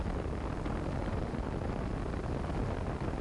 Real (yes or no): yes